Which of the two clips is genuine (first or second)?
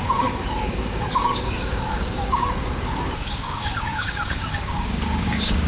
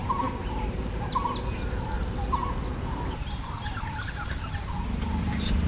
second